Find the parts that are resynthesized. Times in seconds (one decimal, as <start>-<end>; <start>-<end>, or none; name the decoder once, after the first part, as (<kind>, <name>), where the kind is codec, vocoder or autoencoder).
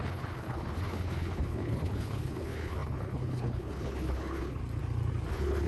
0.0-4.6 (codec, HILCodec); 5.3-5.7